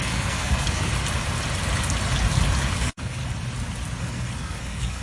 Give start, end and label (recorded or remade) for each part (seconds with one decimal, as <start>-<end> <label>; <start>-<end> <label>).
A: 0.0-0.9 remade; 0.9-2.7 recorded; 2.7-3.2 remade; 3.2-4.0 recorded; 4.0-5.0 remade